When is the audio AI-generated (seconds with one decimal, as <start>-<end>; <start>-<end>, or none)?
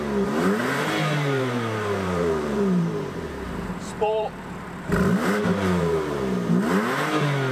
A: 0.6-4.9; 5.5-6.2